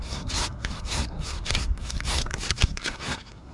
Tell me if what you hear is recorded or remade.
remade